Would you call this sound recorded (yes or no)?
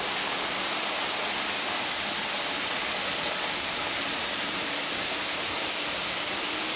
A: no